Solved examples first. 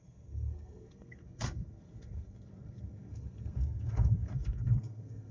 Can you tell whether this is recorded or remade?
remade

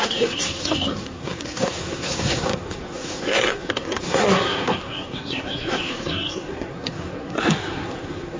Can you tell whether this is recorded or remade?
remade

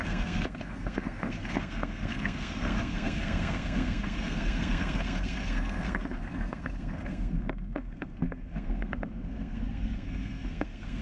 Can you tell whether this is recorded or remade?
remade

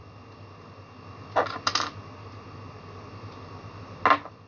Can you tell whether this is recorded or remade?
recorded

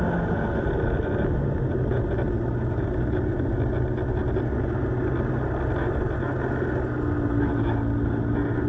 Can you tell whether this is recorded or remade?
recorded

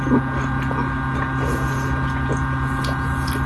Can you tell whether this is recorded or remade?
recorded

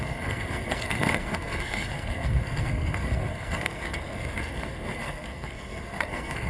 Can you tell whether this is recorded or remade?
remade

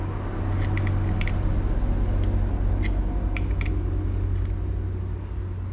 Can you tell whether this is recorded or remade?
recorded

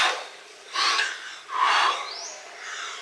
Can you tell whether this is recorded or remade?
recorded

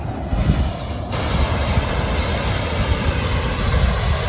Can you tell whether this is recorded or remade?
recorded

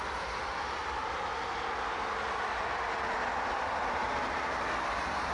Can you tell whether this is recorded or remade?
recorded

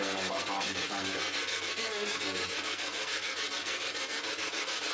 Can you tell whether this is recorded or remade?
remade